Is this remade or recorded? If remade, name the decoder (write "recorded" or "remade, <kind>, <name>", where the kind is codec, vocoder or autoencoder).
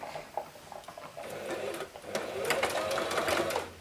recorded